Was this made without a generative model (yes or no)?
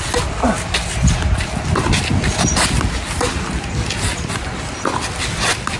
yes